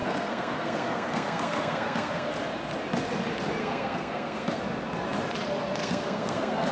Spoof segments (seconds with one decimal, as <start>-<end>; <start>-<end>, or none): 0.0-2.3; 3.6-4.6; 5.8-6.7